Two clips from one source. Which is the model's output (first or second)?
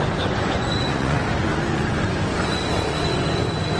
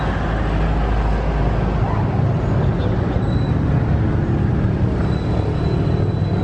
first